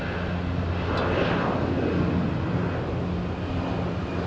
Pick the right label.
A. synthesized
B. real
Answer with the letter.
B